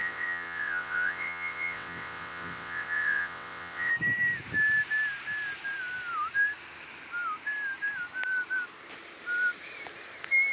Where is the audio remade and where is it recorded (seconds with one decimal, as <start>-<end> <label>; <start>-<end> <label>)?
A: 0.0-3.9 remade; 3.9-10.5 recorded

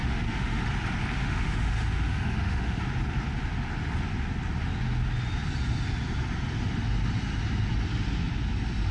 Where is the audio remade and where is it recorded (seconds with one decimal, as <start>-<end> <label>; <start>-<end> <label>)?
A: 0.0-0.7 remade; 0.7-1.2 recorded; 1.2-2.8 remade; 2.8-8.9 recorded

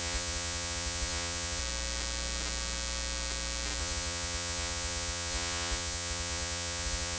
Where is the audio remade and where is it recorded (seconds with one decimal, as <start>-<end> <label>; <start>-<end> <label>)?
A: 0.0-1.6 remade; 1.6-3.8 recorded; 3.8-7.2 remade

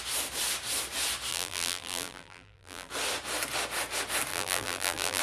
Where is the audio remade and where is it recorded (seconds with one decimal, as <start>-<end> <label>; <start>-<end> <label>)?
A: 0.0-1.3 recorded; 1.3-2.9 remade; 2.9-4.3 recorded; 4.3-5.2 remade